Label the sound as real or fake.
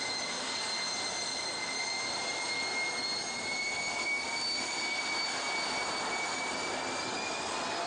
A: real